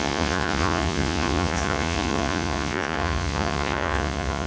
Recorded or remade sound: remade